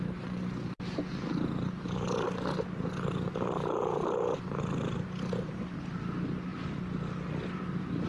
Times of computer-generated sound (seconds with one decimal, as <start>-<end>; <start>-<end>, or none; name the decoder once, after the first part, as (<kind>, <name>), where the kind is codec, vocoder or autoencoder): none